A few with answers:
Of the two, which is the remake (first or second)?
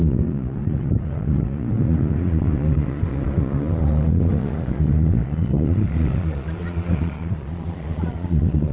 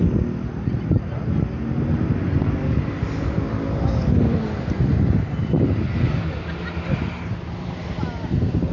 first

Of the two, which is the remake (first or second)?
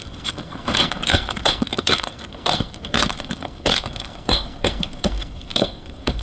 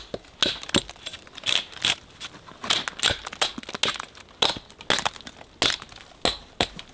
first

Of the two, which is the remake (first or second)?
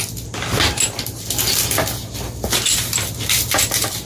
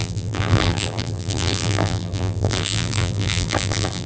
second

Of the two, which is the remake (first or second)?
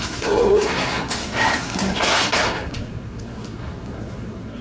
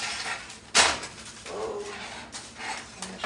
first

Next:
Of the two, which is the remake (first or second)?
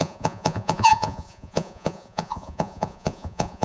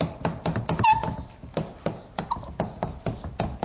first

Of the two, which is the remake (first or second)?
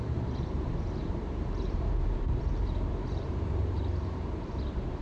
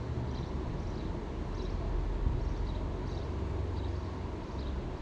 first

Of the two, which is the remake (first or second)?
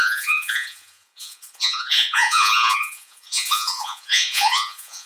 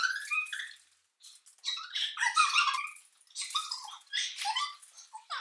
first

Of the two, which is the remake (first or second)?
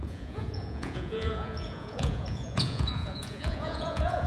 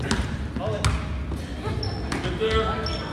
first